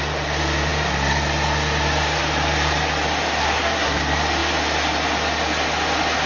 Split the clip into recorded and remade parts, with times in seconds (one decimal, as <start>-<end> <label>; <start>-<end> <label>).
0.0-3.4 recorded; 3.4-4.0 remade; 4.0-6.3 recorded